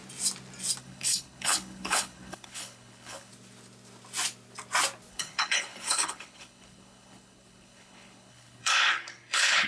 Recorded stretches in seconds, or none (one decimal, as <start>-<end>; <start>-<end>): 0.0-0.8; 3.3-5.1